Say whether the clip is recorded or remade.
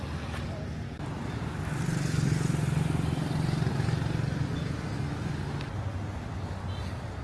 recorded